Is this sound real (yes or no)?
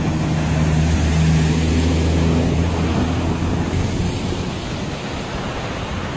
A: yes